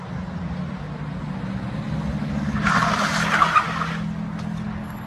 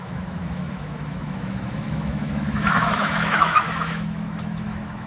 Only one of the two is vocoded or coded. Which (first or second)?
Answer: second